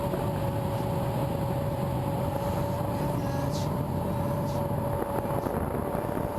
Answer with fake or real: real